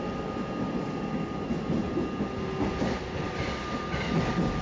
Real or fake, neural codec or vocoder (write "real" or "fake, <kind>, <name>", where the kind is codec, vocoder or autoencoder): real